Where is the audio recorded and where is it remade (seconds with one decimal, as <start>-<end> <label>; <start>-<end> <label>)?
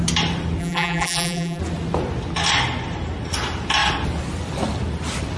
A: 0.0-0.6 recorded; 0.6-1.6 remade; 1.6-5.4 recorded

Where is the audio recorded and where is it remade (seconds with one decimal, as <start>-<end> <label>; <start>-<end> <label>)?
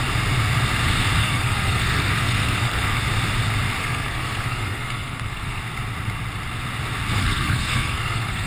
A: 0.0-1.2 recorded; 1.2-3.0 remade; 3.0-3.8 recorded; 3.8-5.6 remade; 5.6-7.2 recorded; 7.2-8.5 remade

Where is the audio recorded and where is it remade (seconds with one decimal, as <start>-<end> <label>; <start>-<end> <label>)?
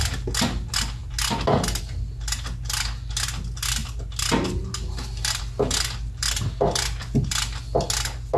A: 0.0-8.4 recorded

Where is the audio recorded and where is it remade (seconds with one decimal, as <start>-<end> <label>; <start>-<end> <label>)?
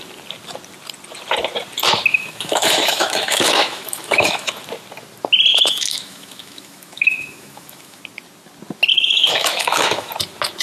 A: 0.0-2.1 recorded; 2.1-4.5 remade; 4.5-5.5 recorded; 5.5-8.0 remade; 8.0-8.9 recorded; 8.9-10.1 remade; 10.1-10.6 recorded